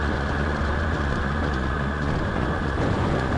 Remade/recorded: remade